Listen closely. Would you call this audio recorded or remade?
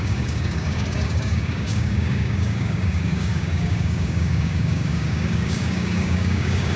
remade